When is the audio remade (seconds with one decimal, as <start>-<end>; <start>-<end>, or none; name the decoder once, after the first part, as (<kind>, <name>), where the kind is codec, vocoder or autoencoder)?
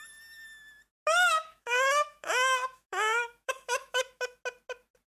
1.3-4.4 (autoencoder, DAC-VAE)